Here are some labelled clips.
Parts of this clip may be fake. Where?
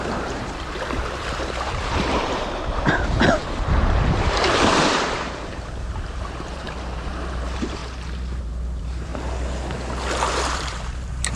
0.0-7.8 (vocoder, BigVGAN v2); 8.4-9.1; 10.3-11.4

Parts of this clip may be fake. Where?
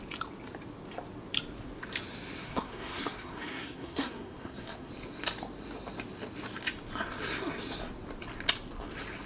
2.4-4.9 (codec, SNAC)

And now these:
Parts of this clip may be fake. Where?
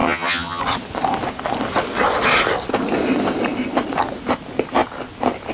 0.0-0.6 (vocoder, HiFi-GAN)